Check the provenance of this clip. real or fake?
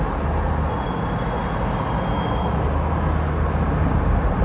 real